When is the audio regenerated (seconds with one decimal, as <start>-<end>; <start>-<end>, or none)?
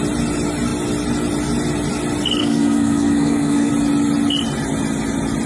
2.4-3.7